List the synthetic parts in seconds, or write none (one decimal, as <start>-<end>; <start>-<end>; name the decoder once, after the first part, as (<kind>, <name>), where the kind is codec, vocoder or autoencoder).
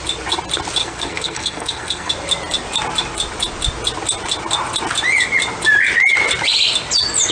0.8-2.1 (codec, SNAC)